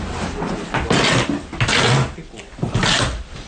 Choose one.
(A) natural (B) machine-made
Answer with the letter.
A